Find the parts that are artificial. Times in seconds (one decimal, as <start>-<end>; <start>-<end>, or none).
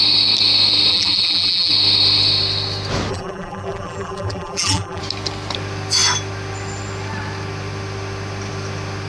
0.9-1.7; 3.1-5.0